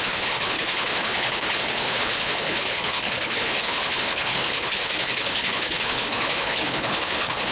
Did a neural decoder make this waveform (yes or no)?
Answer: yes